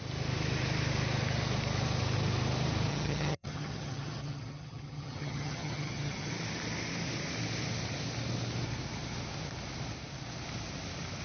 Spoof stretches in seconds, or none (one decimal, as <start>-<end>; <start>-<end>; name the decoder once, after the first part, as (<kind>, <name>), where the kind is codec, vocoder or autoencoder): 2.9-6.3 (vocoder, HiFi-GAN)